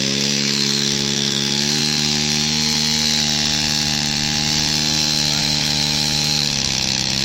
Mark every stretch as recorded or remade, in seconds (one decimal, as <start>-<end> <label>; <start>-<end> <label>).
0.0-1.8 remade; 1.8-5.4 recorded; 5.4-7.2 remade

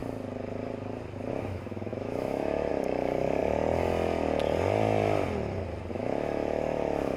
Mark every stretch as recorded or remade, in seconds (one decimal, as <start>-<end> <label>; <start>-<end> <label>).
0.0-1.3 recorded; 1.3-3.4 remade; 3.4-5.9 recorded; 5.9-7.2 remade

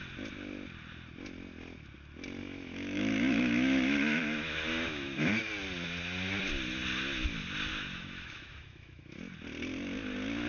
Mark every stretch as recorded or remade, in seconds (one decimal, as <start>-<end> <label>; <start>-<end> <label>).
0.0-2.4 recorded; 2.4-5.3 remade; 5.3-7.7 recorded; 7.7-9.2 remade; 9.2-10.5 recorded

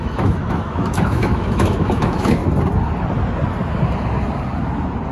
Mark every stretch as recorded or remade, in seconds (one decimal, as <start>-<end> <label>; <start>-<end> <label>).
0.0-2.4 remade; 2.4-5.1 recorded

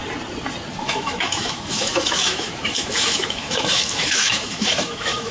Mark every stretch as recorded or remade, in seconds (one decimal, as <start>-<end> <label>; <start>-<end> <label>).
0.0-0.8 recorded; 0.8-5.3 remade

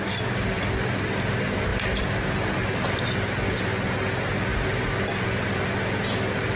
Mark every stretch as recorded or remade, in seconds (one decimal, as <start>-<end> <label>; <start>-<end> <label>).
0.0-6.6 recorded